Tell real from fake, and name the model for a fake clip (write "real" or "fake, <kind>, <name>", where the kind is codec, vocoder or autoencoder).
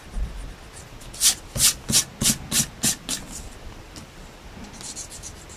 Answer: real